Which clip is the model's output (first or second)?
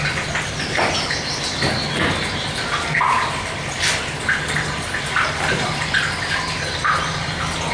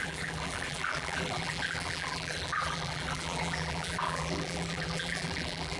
second